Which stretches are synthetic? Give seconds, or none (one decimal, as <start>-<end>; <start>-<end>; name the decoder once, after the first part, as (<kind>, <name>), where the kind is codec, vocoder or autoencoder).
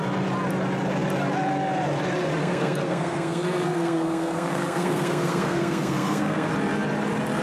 2.4-6.5 (codec, SNAC)